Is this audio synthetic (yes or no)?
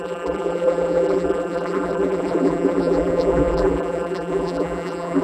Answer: yes